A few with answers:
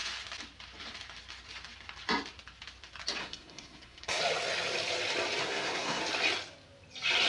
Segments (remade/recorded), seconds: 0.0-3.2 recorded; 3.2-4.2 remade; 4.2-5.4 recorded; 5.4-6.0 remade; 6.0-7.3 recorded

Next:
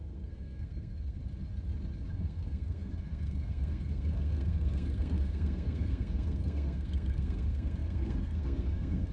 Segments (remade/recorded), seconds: 0.0-1.2 remade; 1.2-2.1 recorded; 2.1-9.1 remade

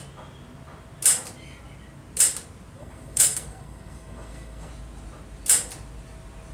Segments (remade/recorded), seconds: 0.0-2.8 recorded; 2.8-4.7 remade; 4.7-6.5 recorded

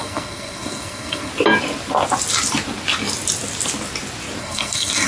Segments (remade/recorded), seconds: 0.0-1.3 remade; 1.3-4.4 recorded; 4.4-5.1 remade

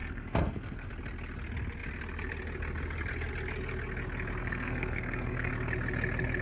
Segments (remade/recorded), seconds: 0.0-0.9 remade; 0.9-4.4 recorded; 4.4-5.5 remade; 5.5-6.4 recorded